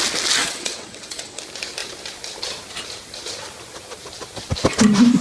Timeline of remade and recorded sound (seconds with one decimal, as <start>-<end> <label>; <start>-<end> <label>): 0.0-0.4 recorded; 0.4-1.4 remade; 1.4-5.2 recorded